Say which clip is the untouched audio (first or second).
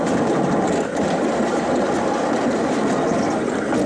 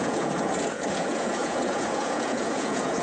first